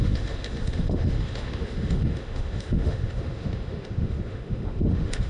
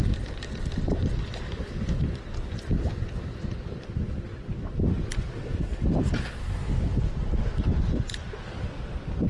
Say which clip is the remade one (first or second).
first